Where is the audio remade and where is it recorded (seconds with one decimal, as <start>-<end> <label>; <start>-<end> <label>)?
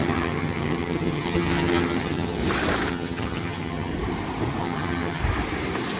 0.0-2.4 remade; 2.4-2.9 recorded; 2.9-3.9 remade; 3.9-4.6 recorded; 4.6-5.2 remade; 5.2-6.0 recorded